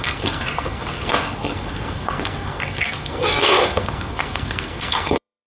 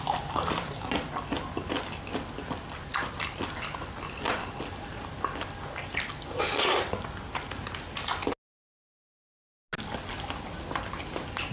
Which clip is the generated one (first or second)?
first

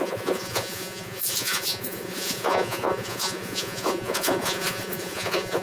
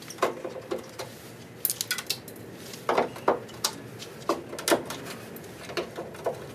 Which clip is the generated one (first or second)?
first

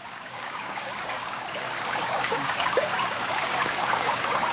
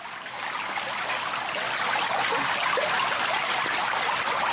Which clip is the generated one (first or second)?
first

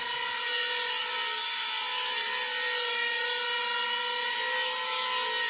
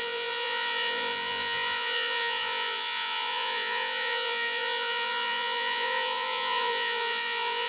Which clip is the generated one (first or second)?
second